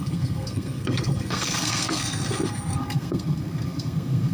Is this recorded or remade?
remade